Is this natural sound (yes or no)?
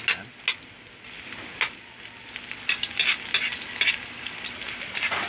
yes